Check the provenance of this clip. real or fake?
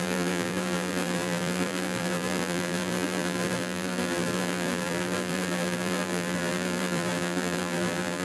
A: fake